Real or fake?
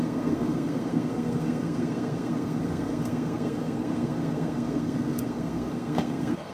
fake